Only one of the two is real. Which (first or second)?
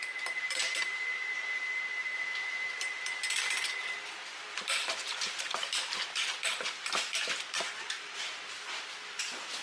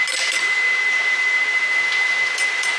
second